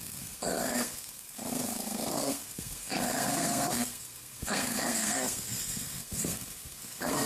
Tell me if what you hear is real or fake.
fake